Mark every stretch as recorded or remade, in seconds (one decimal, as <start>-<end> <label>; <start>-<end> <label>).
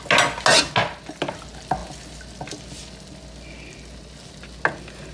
0.0-5.1 recorded